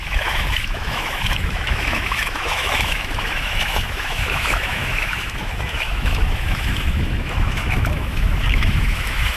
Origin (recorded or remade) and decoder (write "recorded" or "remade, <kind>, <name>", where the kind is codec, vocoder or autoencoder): remade, autoencoder, DAC-VAE